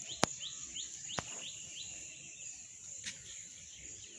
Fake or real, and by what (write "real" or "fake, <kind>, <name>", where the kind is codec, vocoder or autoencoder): real